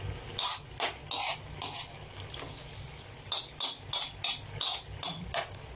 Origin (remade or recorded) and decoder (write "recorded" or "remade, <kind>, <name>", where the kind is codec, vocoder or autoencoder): recorded